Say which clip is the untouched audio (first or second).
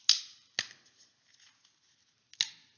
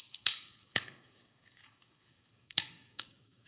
first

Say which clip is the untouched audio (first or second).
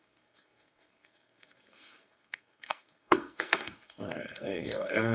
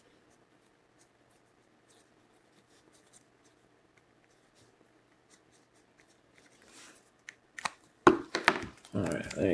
second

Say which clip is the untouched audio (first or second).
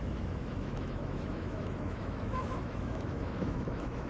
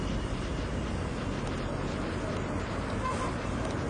second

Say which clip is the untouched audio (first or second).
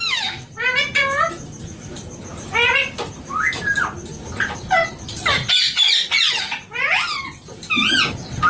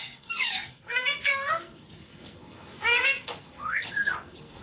first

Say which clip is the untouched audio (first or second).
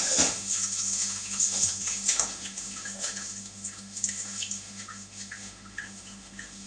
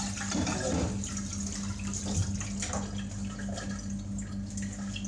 second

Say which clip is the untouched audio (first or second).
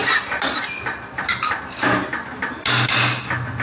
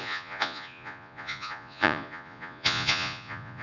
first